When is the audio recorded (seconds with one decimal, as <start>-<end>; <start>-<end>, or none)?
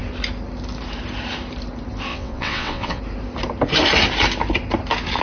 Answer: 0.0-2.1; 3.0-5.2